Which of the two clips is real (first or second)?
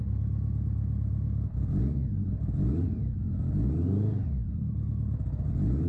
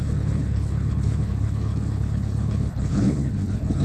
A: first